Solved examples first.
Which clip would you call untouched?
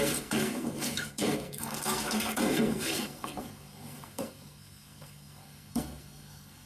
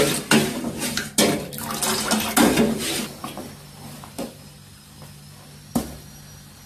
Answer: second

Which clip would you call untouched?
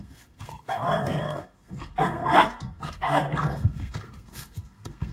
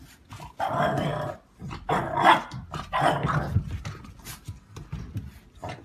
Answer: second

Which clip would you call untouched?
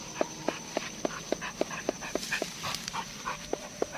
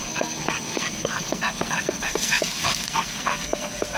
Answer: first